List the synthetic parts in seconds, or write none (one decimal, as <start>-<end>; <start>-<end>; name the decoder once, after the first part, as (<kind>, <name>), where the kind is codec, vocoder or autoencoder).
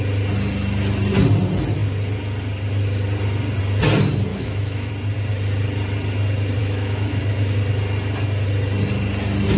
4.3-4.9 (autoencoder, DAC-VAE); 6.6-7.2